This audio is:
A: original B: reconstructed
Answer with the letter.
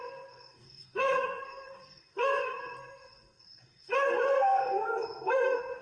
B